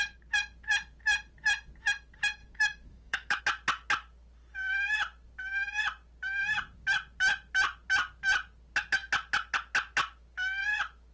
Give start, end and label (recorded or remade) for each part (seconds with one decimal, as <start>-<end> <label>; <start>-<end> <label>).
0.0-2.4 recorded; 2.4-3.4 remade; 3.4-11.1 recorded